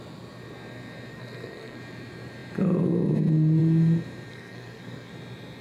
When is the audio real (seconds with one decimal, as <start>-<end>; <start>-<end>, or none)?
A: 0.0-1.1; 1.8-4.3; 5.1-5.6